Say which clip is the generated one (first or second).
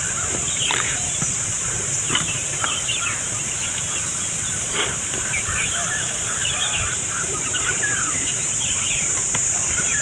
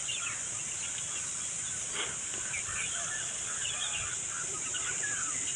first